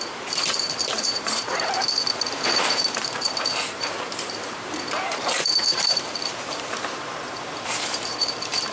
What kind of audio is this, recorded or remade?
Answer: remade